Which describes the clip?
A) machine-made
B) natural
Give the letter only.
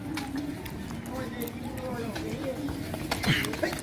B